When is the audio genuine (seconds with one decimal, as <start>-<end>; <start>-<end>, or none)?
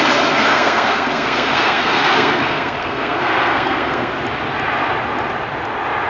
0.0-0.4; 4.1-6.1